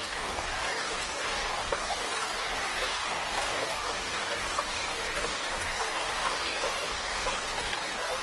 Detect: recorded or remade remade